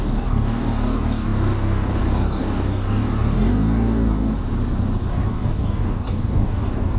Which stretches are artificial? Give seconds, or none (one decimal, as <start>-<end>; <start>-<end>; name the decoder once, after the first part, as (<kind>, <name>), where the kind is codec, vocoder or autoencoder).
0.0-4.3 (codec, DAC); 5.1-7.0